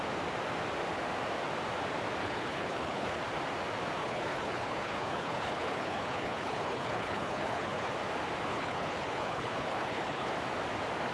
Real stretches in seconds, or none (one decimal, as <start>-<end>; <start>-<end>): 0.0-2.2; 3.2-4.0; 7.9-8.5; 10.3-11.1

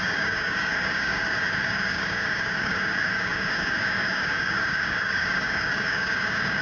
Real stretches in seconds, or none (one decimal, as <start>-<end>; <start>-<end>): none

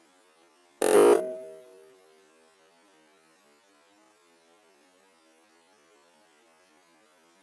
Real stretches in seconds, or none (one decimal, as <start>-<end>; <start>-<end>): 0.0-7.4

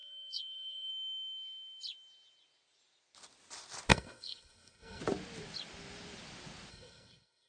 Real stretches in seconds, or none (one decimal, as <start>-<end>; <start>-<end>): 0.9-3.9; 5.0-6.7

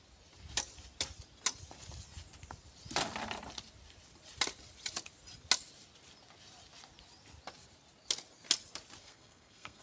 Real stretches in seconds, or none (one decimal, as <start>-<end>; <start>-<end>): 0.0-9.0

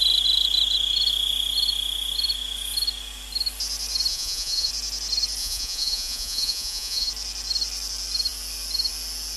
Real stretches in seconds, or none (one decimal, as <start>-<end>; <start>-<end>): 0.0-4.1; 4.7-5.4; 7.1-9.4

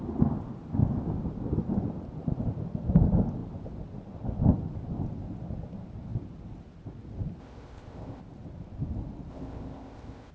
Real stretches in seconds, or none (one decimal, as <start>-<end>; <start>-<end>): 0.0-7.4; 8.2-9.3